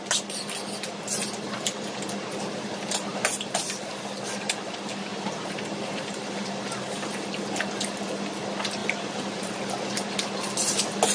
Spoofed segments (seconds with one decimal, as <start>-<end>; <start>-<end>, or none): 3.1-4.0; 5.1-6.6; 8.8-9.7